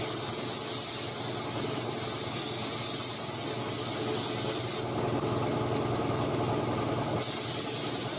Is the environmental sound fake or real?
real